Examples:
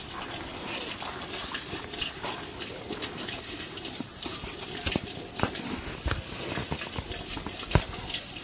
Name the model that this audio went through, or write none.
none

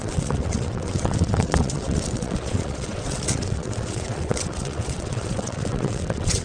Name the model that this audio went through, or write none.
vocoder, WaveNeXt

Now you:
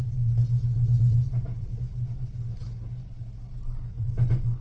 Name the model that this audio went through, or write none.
none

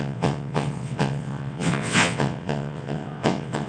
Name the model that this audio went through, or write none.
vocoder, WaveNeXt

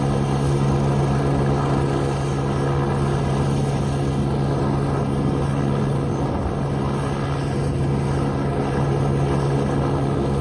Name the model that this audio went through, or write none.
none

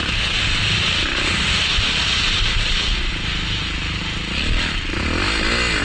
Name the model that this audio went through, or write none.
none